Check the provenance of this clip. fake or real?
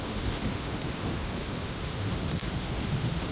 fake